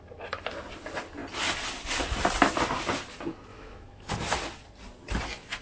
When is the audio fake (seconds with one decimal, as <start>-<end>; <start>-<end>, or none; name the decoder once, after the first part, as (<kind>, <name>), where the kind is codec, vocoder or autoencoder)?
3.5-4.1 (autoencoder, DAC-VAE)